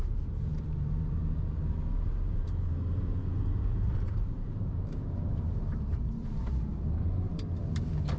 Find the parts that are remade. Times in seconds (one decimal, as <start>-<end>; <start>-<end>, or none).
0.0-8.2